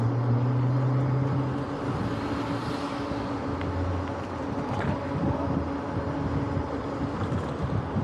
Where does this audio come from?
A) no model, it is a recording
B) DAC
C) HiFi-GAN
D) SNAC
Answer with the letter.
A